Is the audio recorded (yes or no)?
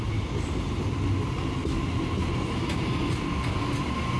yes